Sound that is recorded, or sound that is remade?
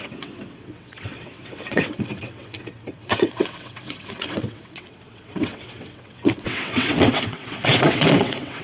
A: remade